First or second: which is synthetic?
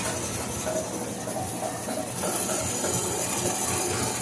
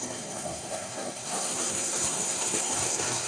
second